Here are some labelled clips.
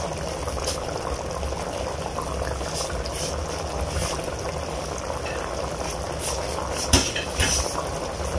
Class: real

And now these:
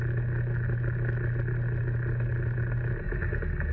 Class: real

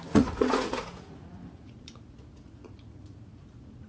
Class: fake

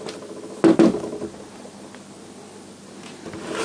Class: real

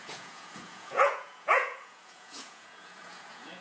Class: fake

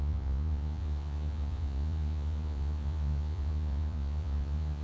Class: fake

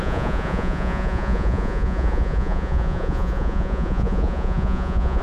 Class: fake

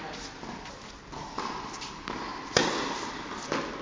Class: real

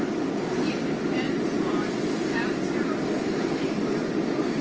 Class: real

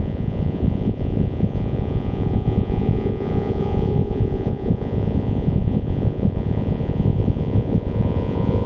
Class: fake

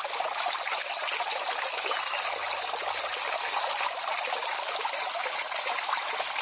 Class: real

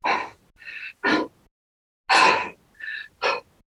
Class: real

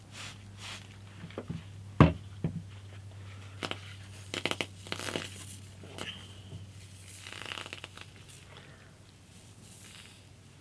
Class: real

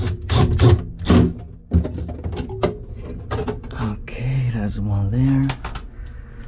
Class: real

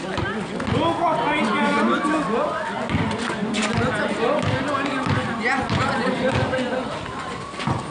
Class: real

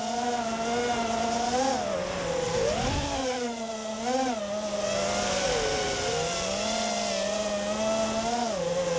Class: real